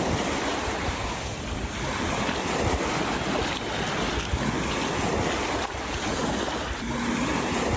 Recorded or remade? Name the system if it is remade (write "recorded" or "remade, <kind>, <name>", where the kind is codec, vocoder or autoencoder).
recorded